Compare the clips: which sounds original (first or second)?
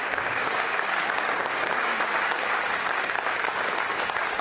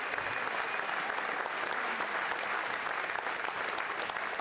second